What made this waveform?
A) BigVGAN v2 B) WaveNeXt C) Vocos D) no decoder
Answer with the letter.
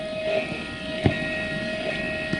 D